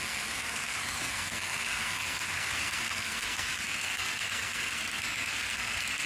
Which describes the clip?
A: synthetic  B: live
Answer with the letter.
A